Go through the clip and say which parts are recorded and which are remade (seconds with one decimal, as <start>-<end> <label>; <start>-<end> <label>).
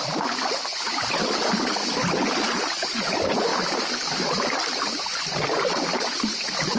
0.0-3.5 recorded; 3.5-5.2 remade; 5.2-6.8 recorded